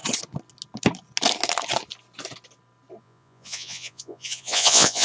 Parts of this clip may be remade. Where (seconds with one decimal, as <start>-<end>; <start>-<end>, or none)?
3.0-5.0